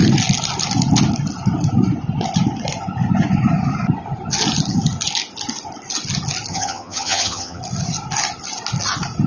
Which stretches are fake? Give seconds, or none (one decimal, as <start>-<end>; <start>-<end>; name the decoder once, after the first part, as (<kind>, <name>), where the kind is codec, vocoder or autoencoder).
6.5-7.6 (vocoder, HiFi-GAN)